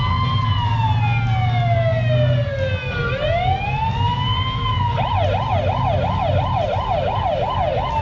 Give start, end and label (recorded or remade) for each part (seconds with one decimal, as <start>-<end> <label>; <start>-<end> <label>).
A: 0.0-8.0 recorded